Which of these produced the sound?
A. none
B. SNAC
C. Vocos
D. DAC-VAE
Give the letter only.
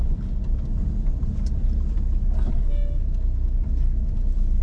A